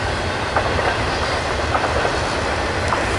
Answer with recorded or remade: recorded